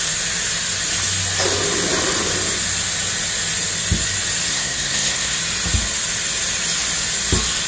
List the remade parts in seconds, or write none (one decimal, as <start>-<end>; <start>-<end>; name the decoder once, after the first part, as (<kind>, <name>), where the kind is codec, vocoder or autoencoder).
4.5-5.4 (codec, SNAC)